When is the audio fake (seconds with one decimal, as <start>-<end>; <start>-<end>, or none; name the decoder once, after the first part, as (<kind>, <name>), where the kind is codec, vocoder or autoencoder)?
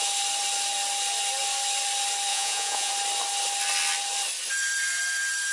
2.3-2.9 (vocoder, Vocos)